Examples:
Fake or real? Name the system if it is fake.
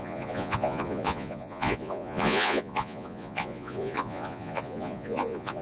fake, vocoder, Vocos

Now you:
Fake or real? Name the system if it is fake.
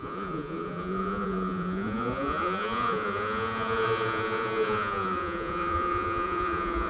fake, vocoder, Vocos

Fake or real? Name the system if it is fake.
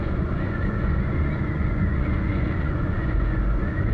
fake, vocoder, Vocos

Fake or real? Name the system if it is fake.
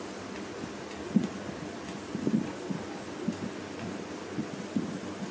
real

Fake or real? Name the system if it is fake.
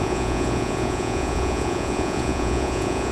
fake, vocoder, Vocos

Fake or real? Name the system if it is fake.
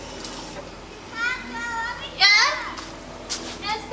real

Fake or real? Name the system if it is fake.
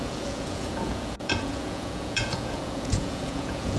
fake, vocoder, Vocos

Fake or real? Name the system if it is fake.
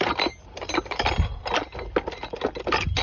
real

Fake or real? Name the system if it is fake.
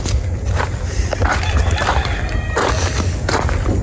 real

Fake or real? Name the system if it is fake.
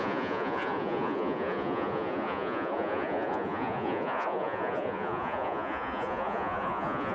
fake, vocoder, Vocos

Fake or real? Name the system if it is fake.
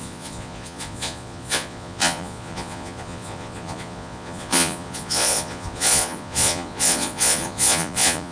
fake, vocoder, Vocos